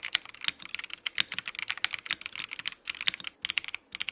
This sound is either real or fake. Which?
real